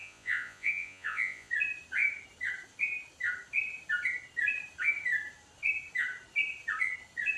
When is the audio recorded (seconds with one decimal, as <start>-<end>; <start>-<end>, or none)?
1.5-7.4